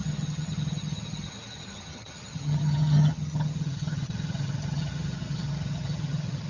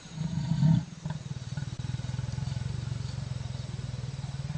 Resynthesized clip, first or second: first